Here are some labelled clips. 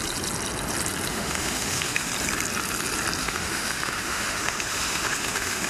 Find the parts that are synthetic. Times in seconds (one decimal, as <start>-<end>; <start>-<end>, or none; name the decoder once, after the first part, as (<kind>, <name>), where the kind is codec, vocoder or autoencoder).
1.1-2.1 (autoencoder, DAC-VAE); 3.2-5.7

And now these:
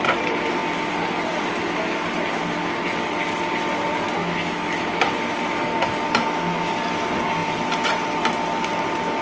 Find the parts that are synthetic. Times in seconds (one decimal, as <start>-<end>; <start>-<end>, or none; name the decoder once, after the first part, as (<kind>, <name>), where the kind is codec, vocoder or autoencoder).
4.2-4.9 (autoencoder, DAC-VAE)

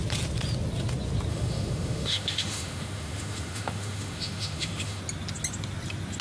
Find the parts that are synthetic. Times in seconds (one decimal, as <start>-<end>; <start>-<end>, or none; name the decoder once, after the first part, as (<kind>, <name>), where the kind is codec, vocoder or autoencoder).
1.3-5.0 (autoencoder, DAC-VAE)

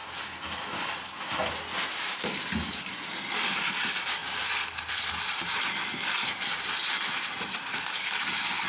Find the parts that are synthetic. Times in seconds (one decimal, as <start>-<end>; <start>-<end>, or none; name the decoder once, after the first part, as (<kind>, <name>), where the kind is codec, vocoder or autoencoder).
none

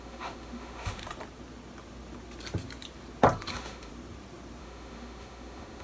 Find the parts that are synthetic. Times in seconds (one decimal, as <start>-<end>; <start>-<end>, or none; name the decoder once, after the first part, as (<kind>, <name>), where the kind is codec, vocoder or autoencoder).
0.0-1.0 (autoencoder, DAC-VAE); 3.5-3.9; 4.6-5.8

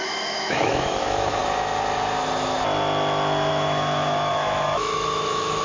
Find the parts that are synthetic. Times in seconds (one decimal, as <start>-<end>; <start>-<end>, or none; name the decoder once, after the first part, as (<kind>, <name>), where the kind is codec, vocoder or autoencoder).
0.0-1.4 (autoencoder, DAC-VAE); 3.5-5.6